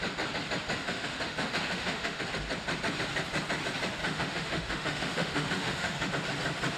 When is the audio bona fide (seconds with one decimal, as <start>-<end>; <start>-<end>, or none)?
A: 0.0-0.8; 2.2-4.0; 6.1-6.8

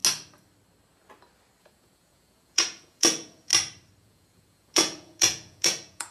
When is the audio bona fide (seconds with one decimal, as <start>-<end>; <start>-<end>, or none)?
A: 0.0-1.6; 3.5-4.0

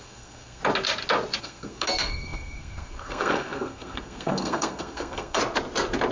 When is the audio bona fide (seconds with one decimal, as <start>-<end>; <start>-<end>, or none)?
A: 0.6-1.4; 5.4-6.1